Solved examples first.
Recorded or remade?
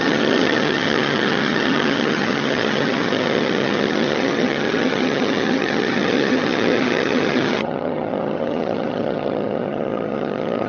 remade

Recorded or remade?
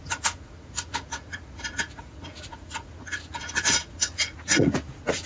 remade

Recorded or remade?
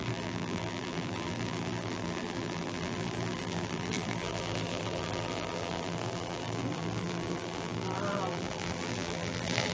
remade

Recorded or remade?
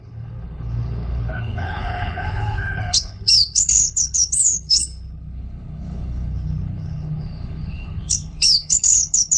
remade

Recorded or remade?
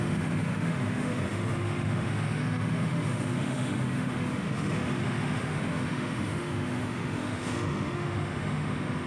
remade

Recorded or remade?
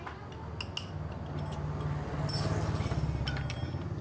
recorded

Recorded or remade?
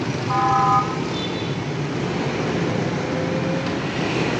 recorded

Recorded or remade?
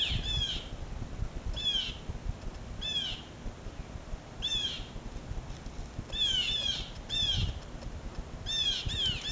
recorded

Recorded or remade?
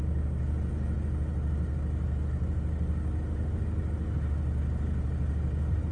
recorded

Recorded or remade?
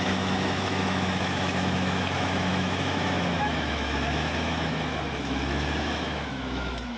remade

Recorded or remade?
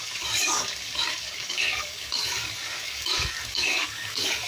remade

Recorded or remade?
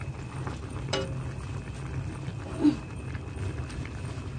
recorded